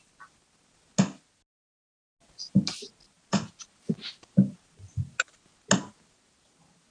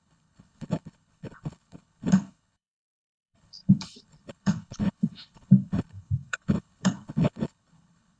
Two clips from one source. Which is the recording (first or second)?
first